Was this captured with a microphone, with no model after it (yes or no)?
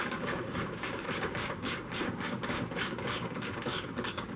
no